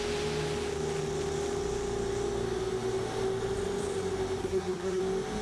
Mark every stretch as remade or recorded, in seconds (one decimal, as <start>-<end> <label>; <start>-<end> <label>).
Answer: 0.0-4.4 recorded; 4.4-5.0 remade; 5.0-5.4 recorded